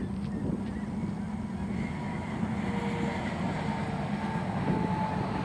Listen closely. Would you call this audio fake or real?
real